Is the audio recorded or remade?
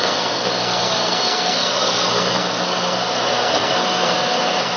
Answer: remade